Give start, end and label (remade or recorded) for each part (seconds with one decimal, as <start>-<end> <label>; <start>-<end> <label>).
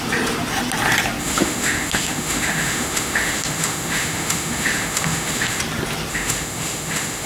0.0-1.2 recorded; 1.2-5.6 remade; 5.6-6.1 recorded; 6.1-7.3 remade